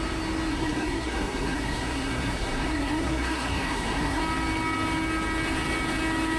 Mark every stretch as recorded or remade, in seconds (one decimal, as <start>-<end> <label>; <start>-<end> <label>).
0.0-0.5 recorded; 0.5-4.2 remade; 4.2-6.4 recorded